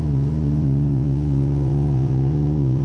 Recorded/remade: remade